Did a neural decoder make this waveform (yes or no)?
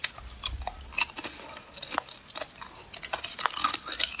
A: no